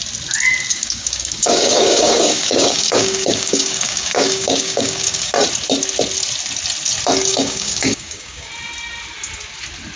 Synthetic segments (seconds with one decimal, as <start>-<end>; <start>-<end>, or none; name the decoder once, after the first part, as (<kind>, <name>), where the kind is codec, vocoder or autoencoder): 0.7-5.3 (codec, DAC); 7.3-8.5